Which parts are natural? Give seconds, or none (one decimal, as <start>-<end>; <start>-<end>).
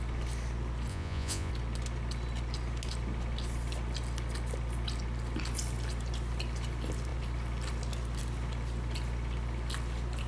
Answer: 0.0-0.9; 1.5-10.3